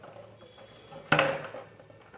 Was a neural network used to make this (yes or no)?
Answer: no